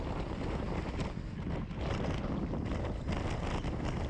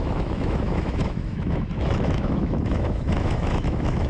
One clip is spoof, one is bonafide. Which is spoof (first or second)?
second